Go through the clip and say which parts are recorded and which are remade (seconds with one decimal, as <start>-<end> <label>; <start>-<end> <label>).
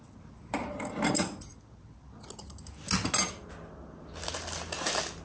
0.0-5.2 recorded